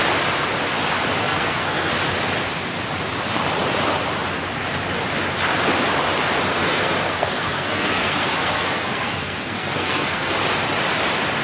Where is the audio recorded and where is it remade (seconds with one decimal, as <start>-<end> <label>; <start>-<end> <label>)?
0.0-1.2 recorded; 1.2-1.9 remade; 1.9-6.5 recorded; 6.5-10.3 remade; 10.3-11.4 recorded